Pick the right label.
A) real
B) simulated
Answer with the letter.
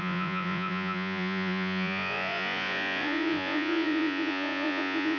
B